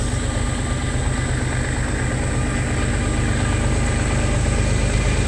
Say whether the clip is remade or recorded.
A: recorded